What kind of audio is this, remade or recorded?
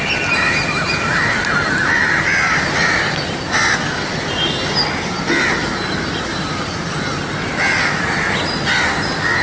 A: recorded